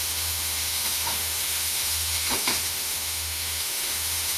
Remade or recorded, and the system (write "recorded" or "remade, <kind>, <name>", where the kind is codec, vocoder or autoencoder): remade, autoencoder, DAC-VAE